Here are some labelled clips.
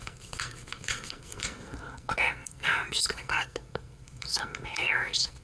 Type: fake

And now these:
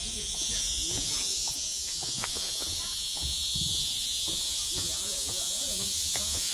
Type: fake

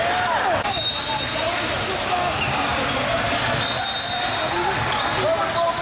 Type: real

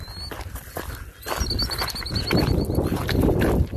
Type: real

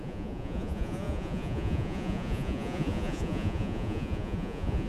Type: fake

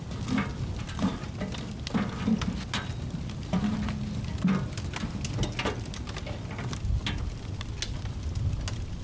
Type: real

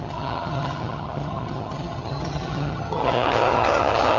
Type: fake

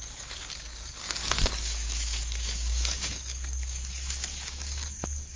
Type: fake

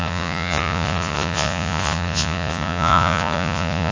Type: fake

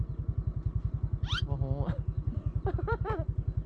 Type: fake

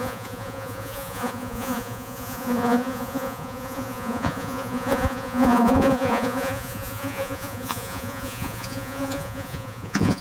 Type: fake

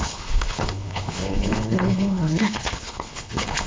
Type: fake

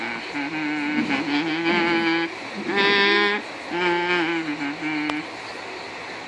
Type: real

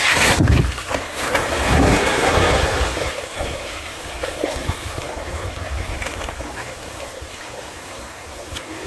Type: fake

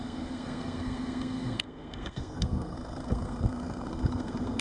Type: fake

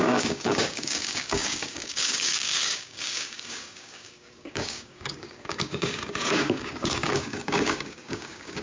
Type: fake